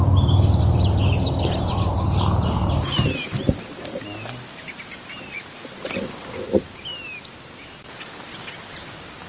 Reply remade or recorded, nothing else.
recorded